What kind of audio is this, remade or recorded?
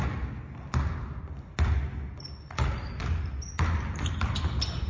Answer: recorded